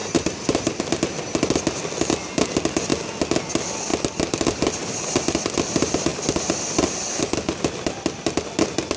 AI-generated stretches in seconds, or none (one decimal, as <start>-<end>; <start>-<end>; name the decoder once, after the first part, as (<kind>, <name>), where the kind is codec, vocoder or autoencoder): 0.0-0.8 (vocoder, BigVGAN v2)